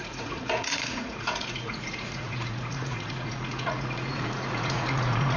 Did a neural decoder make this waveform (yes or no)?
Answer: yes